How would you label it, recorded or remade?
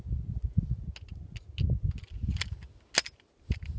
recorded